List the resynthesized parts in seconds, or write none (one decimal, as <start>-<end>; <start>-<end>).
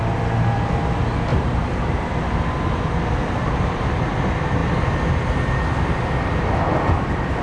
1.3-2.1; 3.2-4.1